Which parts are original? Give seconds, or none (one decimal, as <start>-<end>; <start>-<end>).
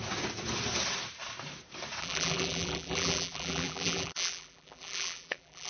0.0-2.0